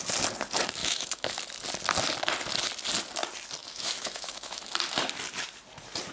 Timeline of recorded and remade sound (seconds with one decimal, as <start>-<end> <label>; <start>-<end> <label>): 0.0-0.8 recorded; 0.8-1.4 remade; 1.4-3.6 recorded; 3.6-4.6 remade; 4.6-6.1 recorded